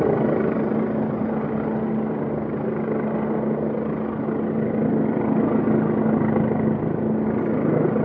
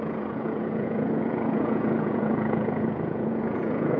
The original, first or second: first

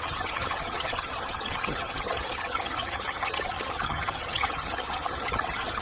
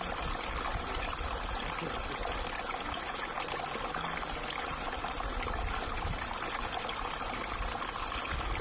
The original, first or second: second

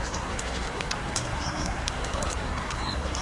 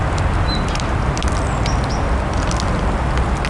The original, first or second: second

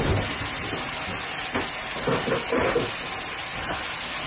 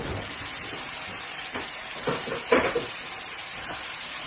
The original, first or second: first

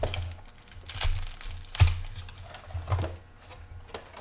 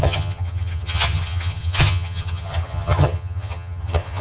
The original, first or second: first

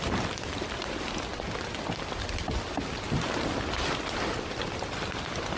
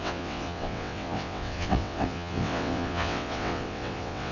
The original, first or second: first